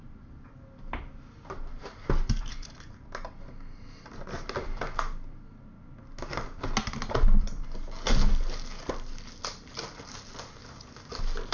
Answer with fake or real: real